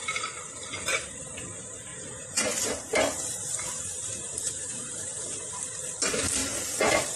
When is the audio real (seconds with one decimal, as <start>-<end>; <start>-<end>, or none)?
0.0-1.9; 5.5-7.2